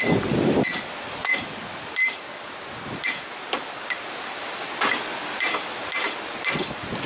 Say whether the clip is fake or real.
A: real